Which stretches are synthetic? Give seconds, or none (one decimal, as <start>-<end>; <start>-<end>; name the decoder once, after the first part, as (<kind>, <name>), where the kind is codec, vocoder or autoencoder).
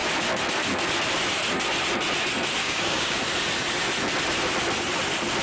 2.6-3.2 (codec, DAC)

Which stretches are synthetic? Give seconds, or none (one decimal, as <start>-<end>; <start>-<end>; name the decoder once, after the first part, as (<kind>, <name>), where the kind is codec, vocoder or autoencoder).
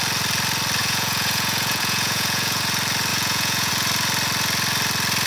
0.8-2.6 (vocoder, Vocos); 3.1-3.7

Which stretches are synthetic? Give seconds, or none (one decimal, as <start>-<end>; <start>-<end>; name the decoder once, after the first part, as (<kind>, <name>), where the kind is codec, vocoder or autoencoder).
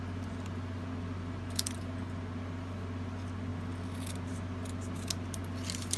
none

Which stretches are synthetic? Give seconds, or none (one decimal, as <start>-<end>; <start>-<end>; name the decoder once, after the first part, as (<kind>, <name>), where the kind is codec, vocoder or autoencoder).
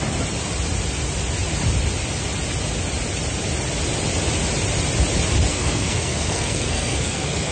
5.5-7.5 (codec, SNAC)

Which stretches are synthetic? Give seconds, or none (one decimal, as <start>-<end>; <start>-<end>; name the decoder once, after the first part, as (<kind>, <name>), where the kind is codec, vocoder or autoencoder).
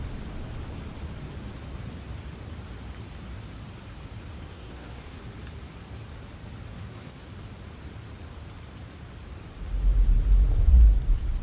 4.5-5.2 (codec, SNAC); 6.7-7.3